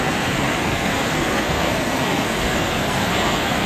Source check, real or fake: fake